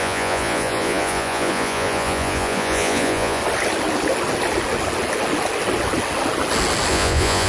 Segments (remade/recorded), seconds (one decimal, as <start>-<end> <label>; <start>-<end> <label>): 0.0-3.4 remade; 3.4-6.9 recorded; 6.9-7.5 remade